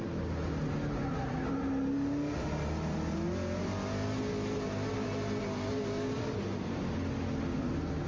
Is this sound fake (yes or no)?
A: no